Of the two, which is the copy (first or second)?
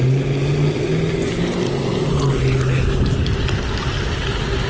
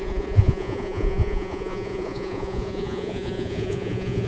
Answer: second